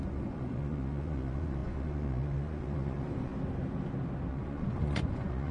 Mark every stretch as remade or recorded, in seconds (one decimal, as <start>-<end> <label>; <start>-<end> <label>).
0.0-3.3 remade; 3.3-4.3 recorded; 4.3-5.5 remade